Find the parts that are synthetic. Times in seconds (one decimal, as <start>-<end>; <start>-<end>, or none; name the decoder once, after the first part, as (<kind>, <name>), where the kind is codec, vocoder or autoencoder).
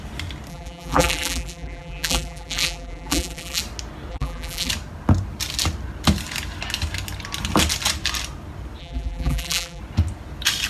0.5-3.6 (vocoder, BigVGAN v2); 4.1-4.7; 8.8-9.8